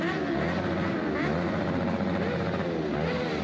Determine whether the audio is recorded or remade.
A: remade